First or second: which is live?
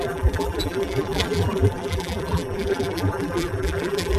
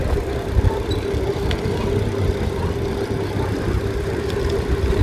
second